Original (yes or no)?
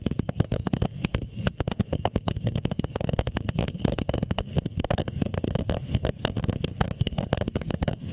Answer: no